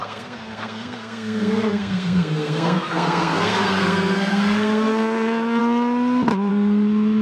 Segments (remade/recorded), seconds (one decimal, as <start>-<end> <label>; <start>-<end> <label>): 0.0-5.6 remade; 5.6-6.5 recorded; 6.5-7.2 remade